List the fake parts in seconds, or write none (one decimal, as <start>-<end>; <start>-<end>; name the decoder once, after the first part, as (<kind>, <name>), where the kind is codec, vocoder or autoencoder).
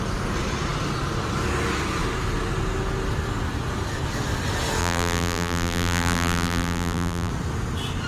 4.8-7.3 (vocoder, BigVGAN v2)